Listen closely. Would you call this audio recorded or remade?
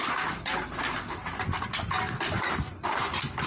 recorded